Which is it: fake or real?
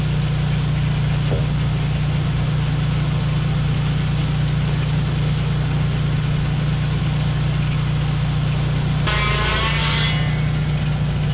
real